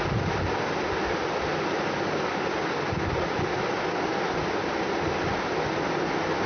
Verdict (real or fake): real